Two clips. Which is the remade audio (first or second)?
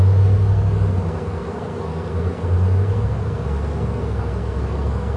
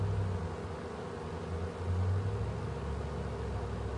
first